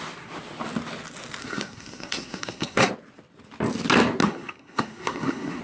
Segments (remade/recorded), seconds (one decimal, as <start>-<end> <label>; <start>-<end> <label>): 0.0-1.4 recorded; 1.4-2.9 remade; 2.9-4.2 recorded; 4.2-5.6 remade